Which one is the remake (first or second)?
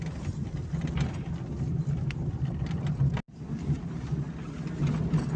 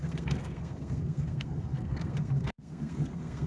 second